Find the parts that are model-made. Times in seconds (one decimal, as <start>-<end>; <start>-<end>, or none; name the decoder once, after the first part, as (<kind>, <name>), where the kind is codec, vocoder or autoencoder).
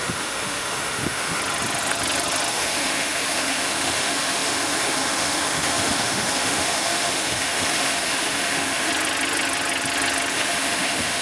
0.0-1.4 (autoencoder, DAC-VAE); 2.5-8.9; 10.3-11.2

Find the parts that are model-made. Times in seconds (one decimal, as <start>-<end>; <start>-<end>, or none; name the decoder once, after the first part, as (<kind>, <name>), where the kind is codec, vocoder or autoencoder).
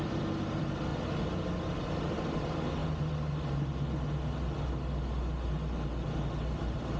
0.0-0.9 (vocoder, BigVGAN v2); 1.6-2.8; 6.5-7.0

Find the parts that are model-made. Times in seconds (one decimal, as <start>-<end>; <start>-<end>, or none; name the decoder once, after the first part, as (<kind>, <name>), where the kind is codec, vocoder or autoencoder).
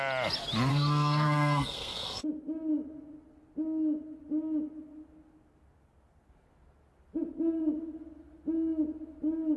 0.7-2.2 (codec, SNAC)